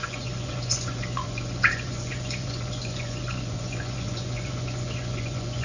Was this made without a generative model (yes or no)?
no